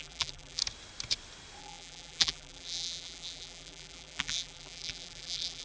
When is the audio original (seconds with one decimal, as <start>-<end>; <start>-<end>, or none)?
0.6-1.6